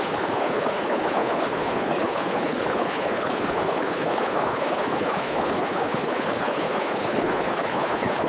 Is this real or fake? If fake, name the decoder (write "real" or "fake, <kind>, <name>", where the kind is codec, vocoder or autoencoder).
fake, codec, HILCodec